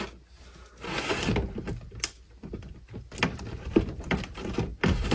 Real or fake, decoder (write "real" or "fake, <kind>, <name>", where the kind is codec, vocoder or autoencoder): real